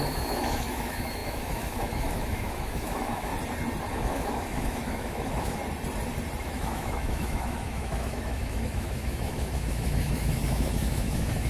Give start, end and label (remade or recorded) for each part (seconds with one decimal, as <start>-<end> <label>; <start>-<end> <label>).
0.0-3.3 remade; 3.3-3.9 recorded; 3.9-5.6 remade; 5.6-6.4 recorded; 6.4-11.5 remade